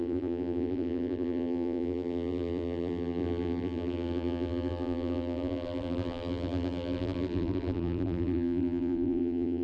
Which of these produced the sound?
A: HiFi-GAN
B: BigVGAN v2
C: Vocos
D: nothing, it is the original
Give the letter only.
B